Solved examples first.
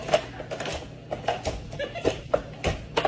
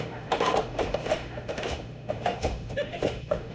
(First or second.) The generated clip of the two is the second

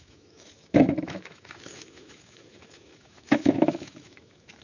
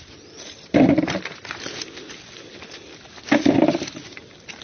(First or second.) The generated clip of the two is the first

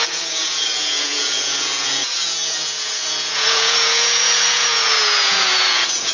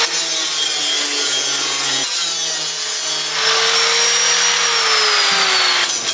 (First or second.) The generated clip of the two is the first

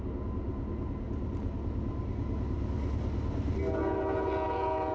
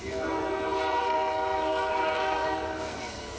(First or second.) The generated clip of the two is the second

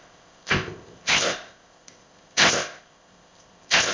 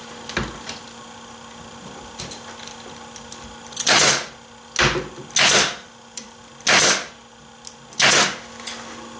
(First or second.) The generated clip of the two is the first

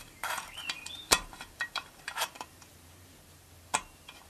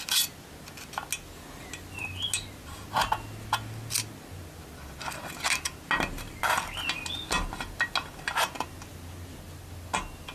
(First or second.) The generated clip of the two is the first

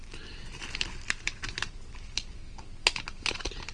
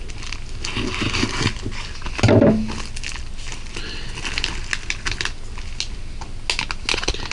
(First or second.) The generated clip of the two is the first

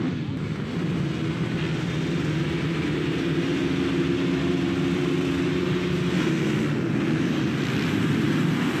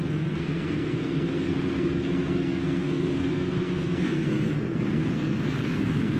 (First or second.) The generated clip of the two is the second